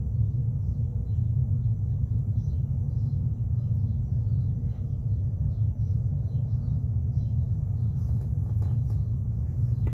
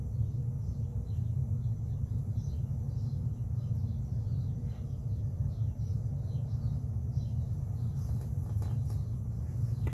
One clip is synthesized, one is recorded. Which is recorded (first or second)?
second